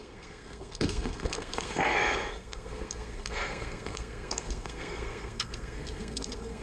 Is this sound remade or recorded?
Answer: remade